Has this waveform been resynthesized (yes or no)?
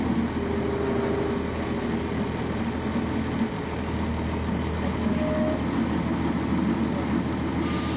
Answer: no